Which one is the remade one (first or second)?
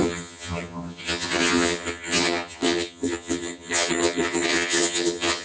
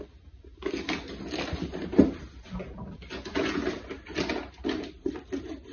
first